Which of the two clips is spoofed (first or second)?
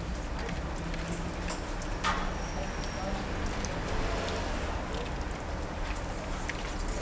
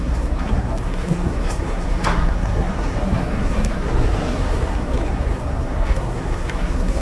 second